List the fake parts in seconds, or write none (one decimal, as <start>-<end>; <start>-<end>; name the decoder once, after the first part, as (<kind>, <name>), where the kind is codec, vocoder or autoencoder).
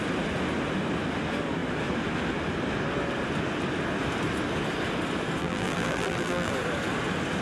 5.4-6.5 (vocoder, BigVGAN v2)